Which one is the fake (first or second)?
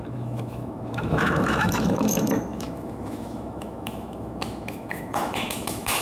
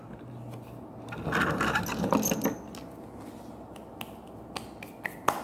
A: first